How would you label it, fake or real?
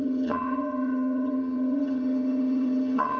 fake